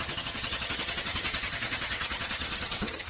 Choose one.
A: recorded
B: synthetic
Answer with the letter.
B